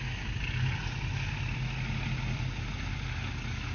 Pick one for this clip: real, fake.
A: real